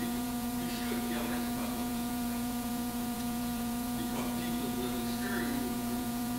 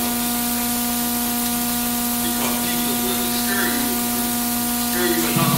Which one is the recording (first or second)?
second